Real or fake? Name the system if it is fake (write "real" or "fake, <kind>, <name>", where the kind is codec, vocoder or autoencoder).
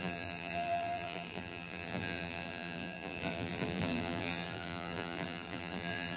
fake, vocoder, BigVGAN v2